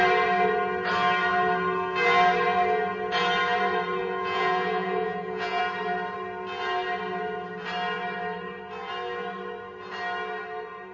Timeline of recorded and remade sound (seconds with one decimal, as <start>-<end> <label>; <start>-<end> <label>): 0.0-4.0 recorded; 4.0-5.6 remade; 5.6-10.9 recorded